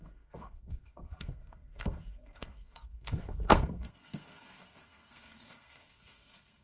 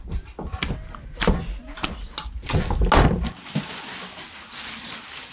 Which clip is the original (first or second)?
second